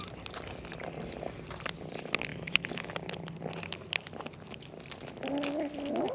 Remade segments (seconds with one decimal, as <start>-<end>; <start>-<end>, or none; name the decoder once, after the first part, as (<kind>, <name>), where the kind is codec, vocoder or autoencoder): 2.3-2.9 (autoencoder, DAC-VAE)